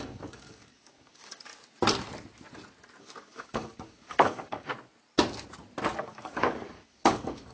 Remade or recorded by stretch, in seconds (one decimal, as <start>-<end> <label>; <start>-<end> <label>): 0.0-1.5 remade; 1.5-3.0 recorded; 3.0-4.7 remade; 4.7-6.0 recorded; 6.0-7.5 remade